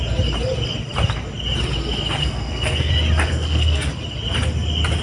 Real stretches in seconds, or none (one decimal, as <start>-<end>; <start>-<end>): 0.0-2.2; 2.9-3.3; 3.9-5.0